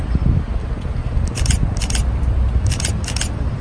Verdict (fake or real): real